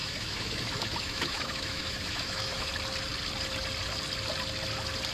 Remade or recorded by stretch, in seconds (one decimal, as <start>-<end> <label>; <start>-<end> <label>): 0.0-2.7 remade; 2.7-5.1 recorded